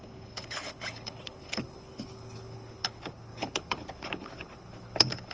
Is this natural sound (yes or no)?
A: no